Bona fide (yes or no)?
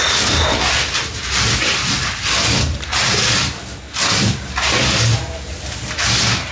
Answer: yes